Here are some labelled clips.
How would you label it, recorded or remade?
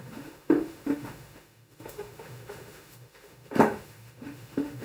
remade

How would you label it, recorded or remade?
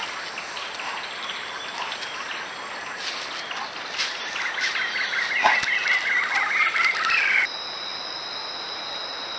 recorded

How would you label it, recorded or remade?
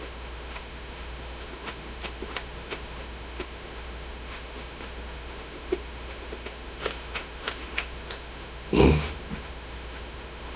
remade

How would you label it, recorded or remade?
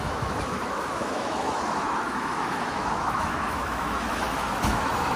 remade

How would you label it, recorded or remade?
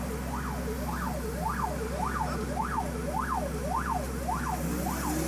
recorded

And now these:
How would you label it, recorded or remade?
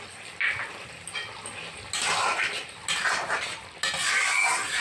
recorded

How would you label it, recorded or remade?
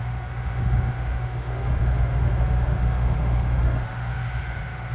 remade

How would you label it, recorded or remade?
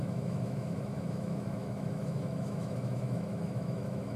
remade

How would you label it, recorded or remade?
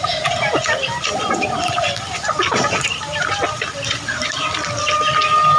recorded